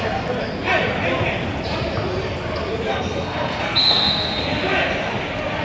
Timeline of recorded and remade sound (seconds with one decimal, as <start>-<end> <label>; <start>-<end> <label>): 0.0-2.9 recorded; 2.9-4.4 remade; 4.4-5.6 recorded